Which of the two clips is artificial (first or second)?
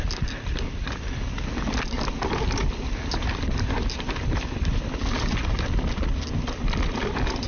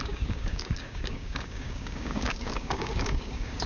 second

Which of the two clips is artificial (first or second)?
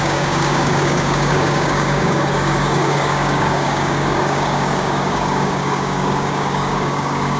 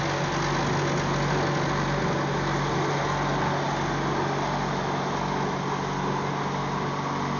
first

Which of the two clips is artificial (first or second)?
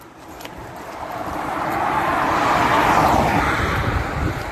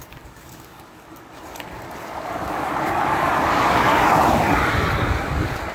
second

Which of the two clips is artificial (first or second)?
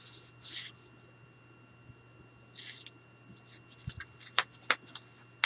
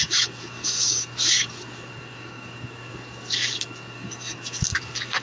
second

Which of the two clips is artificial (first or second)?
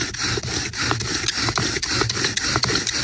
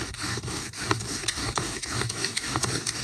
second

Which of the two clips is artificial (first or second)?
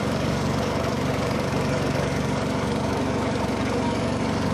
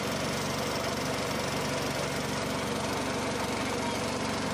first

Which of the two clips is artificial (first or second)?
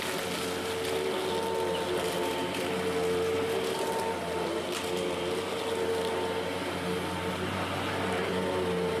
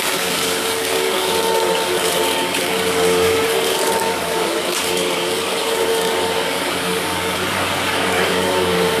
second